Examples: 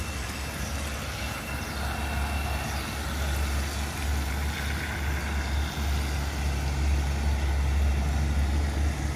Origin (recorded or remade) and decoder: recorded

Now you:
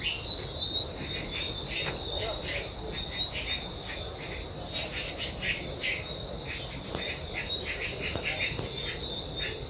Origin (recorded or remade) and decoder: recorded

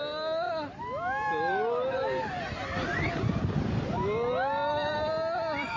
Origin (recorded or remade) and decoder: recorded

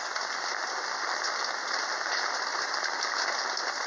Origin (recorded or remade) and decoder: recorded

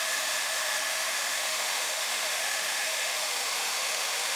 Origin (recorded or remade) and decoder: remade, autoencoder, DAC-VAE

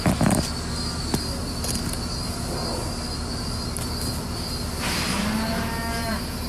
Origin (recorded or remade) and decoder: recorded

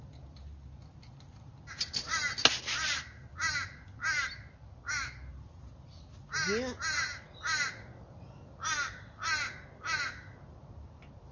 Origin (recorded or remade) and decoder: recorded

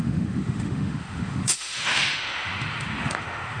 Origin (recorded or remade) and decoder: remade, autoencoder, DAC-VAE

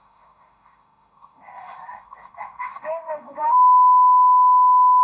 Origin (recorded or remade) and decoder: remade, autoencoder, DAC-VAE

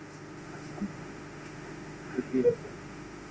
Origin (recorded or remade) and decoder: remade, autoencoder, DAC-VAE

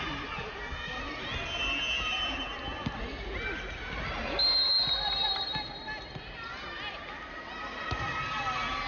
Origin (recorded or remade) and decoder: recorded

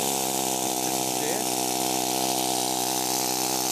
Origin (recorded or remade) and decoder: recorded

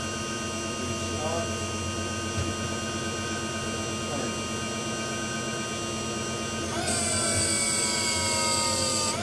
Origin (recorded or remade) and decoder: recorded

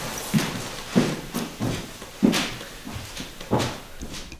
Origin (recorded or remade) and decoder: recorded